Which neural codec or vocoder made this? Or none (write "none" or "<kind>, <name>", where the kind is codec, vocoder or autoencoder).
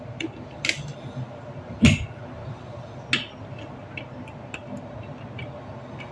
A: none